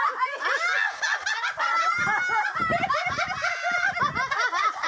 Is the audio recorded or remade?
recorded